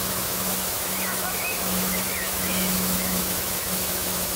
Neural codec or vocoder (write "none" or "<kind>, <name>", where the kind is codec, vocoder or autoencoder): autoencoder, DAC-VAE